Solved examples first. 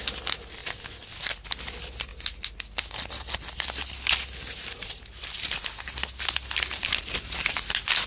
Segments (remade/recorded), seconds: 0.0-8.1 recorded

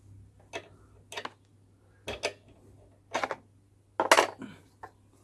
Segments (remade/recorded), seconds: 0.0-5.2 recorded

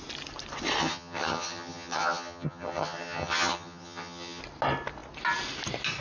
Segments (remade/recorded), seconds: 0.0-0.8 recorded; 0.8-4.4 remade; 4.4-6.0 recorded

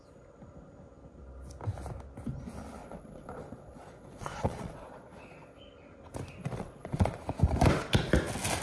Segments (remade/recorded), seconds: 0.0-2.8 recorded; 2.8-5.6 remade; 5.6-6.4 recorded; 6.4-7.2 remade; 7.2-8.6 recorded

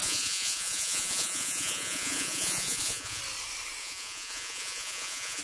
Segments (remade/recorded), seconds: 0.0-3.2 remade; 3.2-3.8 recorded; 3.8-5.4 remade

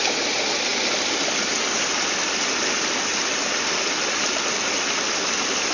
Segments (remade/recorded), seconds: 0.0-5.7 recorded

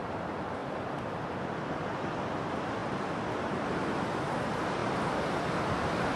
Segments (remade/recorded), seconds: 0.0-0.6 recorded; 0.6-2.1 remade; 2.1-4.8 recorded; 4.8-5.5 remade; 5.5-6.2 recorded

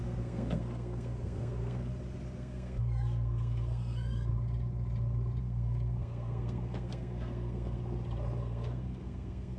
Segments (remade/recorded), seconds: 0.0-1.9 remade; 1.9-2.4 recorded; 2.4-4.3 remade; 4.3-5.4 recorded; 5.4-7.8 remade; 7.8-8.4 recorded; 8.4-9.6 remade